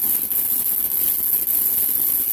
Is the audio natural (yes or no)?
yes